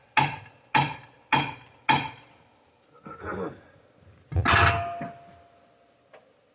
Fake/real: real